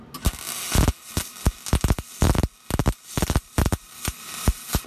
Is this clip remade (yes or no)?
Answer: no